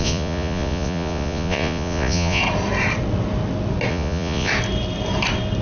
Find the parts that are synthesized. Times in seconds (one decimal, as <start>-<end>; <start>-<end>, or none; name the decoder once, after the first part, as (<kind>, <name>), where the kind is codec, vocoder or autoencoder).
0.0-2.4 (vocoder, Vocos); 3.9-4.5